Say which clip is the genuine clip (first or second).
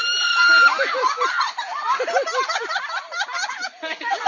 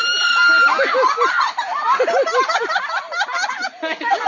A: second